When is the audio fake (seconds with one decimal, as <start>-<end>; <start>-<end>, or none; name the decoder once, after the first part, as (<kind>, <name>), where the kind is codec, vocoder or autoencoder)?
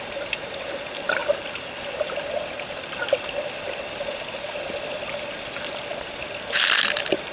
none